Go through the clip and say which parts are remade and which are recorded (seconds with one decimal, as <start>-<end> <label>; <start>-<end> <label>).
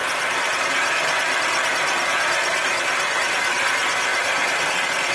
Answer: 0.0-0.5 remade; 0.5-2.5 recorded; 2.5-3.2 remade; 3.2-4.1 recorded; 4.1-5.1 remade